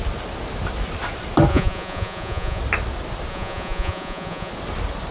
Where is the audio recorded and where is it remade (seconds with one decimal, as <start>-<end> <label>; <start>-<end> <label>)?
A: 0.0-1.5 recorded; 1.5-2.6 remade; 2.6-3.3 recorded; 3.3-4.5 remade; 4.5-5.1 recorded